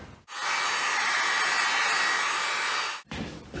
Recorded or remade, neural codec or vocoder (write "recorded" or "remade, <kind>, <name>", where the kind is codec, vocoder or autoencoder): recorded